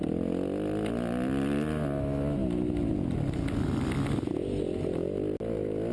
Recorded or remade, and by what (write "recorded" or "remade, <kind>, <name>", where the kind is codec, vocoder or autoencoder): recorded